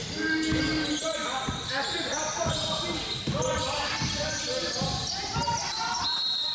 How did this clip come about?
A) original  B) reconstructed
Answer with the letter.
A